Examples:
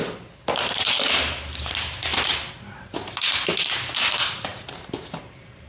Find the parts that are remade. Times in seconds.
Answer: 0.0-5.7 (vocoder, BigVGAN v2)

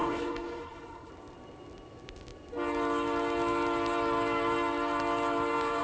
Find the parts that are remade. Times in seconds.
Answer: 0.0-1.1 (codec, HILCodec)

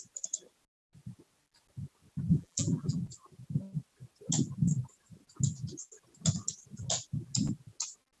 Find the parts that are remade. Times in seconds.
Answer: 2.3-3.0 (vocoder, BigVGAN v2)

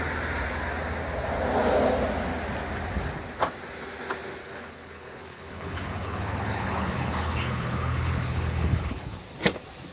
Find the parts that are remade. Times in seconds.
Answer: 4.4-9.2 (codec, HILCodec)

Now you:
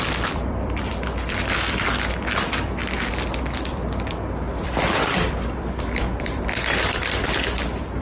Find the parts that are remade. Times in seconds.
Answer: 0.0-2.8 (vocoder, BigVGAN v2); 3.4-8.0

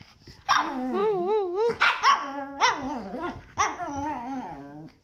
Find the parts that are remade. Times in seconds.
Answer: 1.0-1.7 (autoencoder, DAC-VAE)